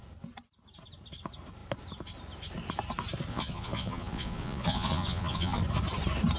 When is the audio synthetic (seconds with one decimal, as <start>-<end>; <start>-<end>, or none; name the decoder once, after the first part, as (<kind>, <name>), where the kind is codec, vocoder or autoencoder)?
3.3-5.6 (vocoder, Vocos)